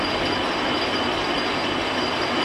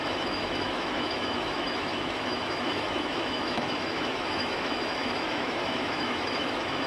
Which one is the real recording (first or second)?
first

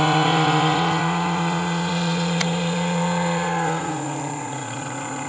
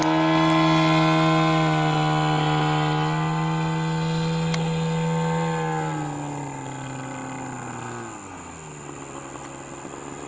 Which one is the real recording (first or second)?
second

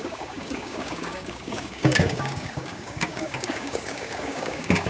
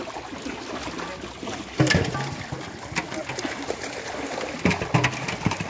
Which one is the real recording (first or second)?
second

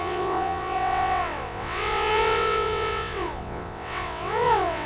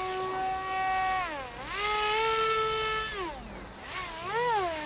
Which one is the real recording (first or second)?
second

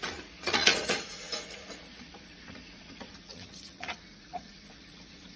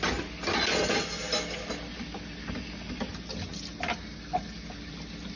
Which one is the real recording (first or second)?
second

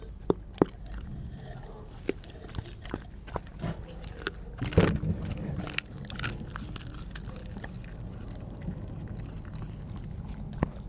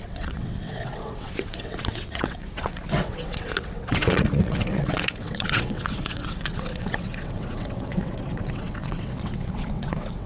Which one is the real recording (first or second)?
first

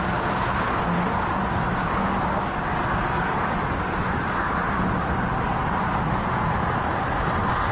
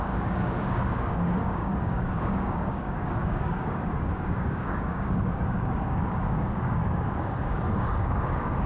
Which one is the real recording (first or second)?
first